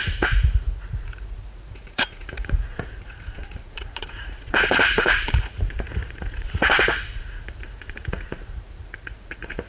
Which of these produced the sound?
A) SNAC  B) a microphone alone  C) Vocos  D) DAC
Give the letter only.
C